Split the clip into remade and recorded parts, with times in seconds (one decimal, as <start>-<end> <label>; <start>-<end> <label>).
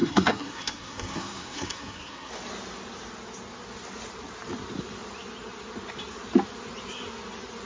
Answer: 0.0-2.3 remade; 2.3-7.7 recorded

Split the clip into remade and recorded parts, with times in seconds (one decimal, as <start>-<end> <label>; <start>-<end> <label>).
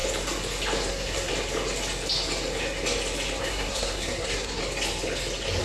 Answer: 0.0-0.9 recorded; 0.9-1.3 remade; 1.3-3.4 recorded; 3.4-4.6 remade; 4.6-5.6 recorded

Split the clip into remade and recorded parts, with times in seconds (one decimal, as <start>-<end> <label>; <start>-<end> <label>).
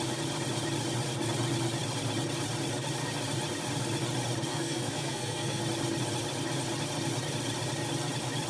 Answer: 0.0-4.5 recorded; 4.5-5.6 remade; 5.6-8.5 recorded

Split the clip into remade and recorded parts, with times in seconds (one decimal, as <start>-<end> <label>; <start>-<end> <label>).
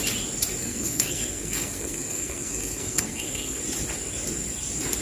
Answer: 0.0-0.6 recorded; 0.6-3.6 remade; 3.6-5.0 recorded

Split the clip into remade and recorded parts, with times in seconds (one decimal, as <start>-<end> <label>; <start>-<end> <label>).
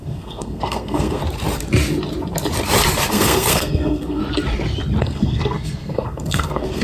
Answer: 0.0-1.2 remade; 1.2-3.1 recorded; 3.1-4.2 remade; 4.2-5.0 recorded; 5.0-6.8 remade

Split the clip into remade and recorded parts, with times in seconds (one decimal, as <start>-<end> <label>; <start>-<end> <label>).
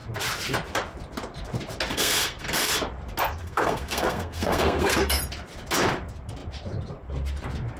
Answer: 0.0-1.9 recorded; 1.9-2.7 remade; 2.7-3.4 recorded; 3.4-5.2 remade; 5.2-7.8 recorded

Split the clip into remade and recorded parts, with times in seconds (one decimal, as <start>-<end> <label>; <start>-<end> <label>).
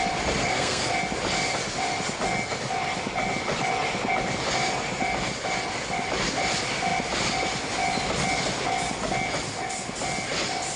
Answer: 0.0-0.4 recorded; 0.4-0.9 remade; 0.9-10.8 recorded